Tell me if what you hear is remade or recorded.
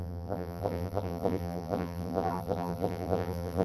remade